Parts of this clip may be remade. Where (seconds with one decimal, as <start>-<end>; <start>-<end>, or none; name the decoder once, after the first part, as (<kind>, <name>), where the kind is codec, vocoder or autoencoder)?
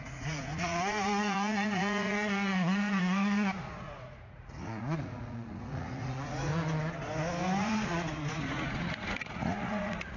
0.0-6.5 (vocoder, Vocos); 7.6-10.2